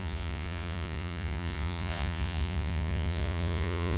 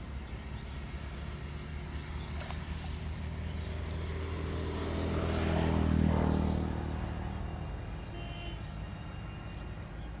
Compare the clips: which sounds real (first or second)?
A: second